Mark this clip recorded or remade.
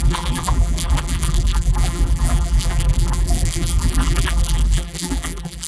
remade